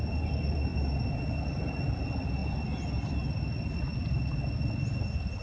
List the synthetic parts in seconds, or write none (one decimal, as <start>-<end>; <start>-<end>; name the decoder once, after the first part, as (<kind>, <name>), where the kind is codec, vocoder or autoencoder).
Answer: none